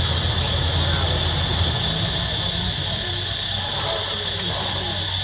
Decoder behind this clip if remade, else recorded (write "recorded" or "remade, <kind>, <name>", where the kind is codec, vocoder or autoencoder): recorded